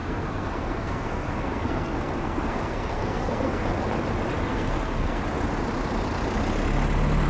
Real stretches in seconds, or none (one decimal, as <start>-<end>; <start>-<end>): 3.7-4.5; 5.2-7.3